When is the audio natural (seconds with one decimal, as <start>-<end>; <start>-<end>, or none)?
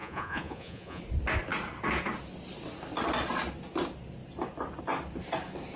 1.0-5.8